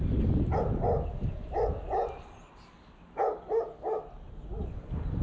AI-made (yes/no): no